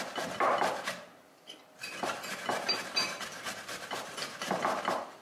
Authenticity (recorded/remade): recorded